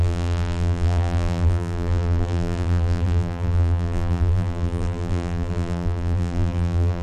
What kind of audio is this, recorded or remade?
remade